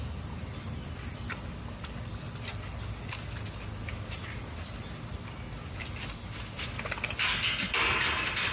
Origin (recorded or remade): recorded